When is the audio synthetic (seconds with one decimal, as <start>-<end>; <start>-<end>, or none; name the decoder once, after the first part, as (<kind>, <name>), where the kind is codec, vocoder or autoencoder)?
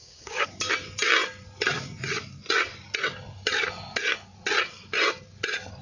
0.0-0.7 (codec, DAC)